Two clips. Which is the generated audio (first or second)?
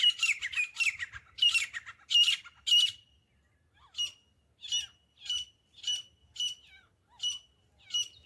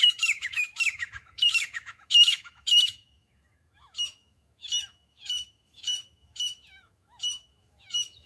second